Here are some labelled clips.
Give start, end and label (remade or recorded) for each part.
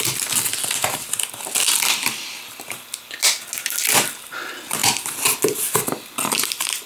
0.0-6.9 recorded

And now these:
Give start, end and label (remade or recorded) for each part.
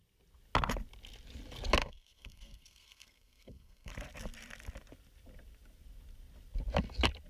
0.0-1.8 recorded; 1.8-3.9 remade; 3.9-7.3 recorded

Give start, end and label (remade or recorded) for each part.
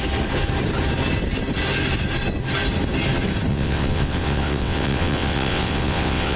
0.0-3.5 recorded; 3.5-6.4 remade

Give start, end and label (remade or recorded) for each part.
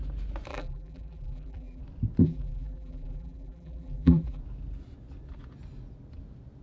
0.0-0.5 recorded; 0.5-1.8 remade; 1.8-2.2 recorded; 2.2-4.4 remade; 4.4-6.6 recorded